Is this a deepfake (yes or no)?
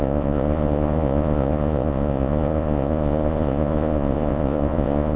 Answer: yes